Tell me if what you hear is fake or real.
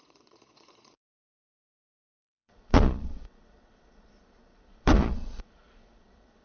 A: fake